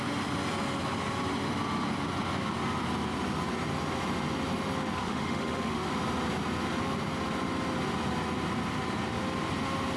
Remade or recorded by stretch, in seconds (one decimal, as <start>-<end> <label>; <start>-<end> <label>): 0.0-5.0 recorded; 5.0-5.9 remade; 5.9-10.0 recorded